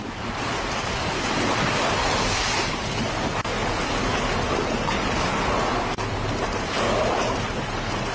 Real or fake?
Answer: real